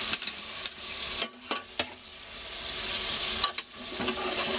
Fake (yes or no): no